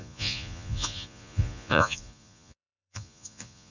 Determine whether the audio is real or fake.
fake